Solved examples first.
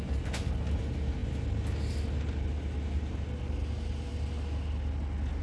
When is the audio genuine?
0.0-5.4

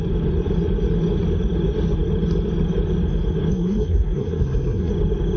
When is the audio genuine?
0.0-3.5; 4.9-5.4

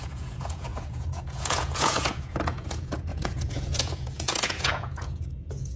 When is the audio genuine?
none

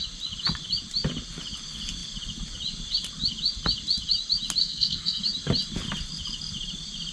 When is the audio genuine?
0.0-4.6; 5.2-7.1

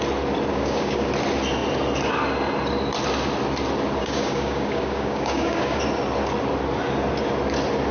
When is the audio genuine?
0.0-0.5; 1.1-4.0; 5.8-7.9

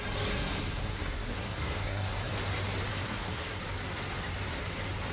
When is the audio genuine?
0.0-0.8; 2.3-2.9; 3.6-5.1

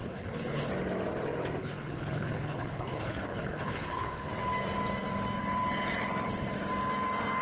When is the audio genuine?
0.7-1.6; 4.3-7.4